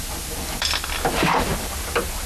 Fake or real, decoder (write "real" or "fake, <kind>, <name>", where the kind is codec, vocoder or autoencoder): real